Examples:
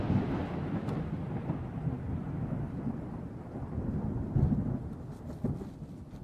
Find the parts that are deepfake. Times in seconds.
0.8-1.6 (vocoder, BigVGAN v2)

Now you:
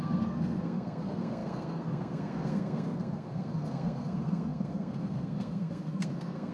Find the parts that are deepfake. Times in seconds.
0.0-6.5 (codec, SNAC)

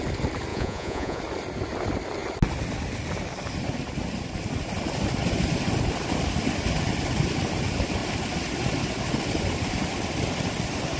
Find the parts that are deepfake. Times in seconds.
0.5-1.2 (vocoder, Vocos)

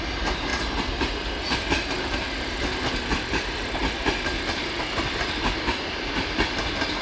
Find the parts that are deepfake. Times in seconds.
3.8-5.7 (vocoder, BigVGAN v2)

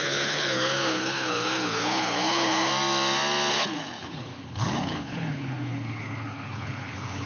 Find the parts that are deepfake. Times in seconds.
0.0-2.7 (codec, HILCodec); 3.5-7.3

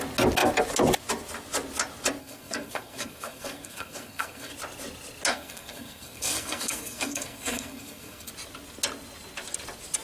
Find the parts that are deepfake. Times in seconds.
2.2-4.5 (codec, SNAC); 5.3-8.3

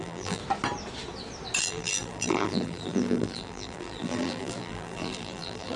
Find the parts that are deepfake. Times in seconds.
0.0-0.4 (vocoder, BigVGAN v2); 1.6-5.8

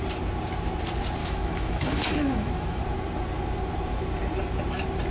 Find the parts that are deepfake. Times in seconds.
1.2-2.8 (autoencoder, DAC-VAE)